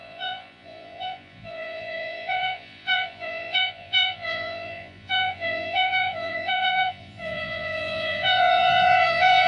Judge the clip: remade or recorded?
remade